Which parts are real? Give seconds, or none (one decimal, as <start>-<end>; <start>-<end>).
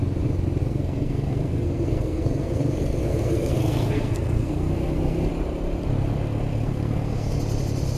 0.0-0.6; 5.3-6.5; 7.4-8.0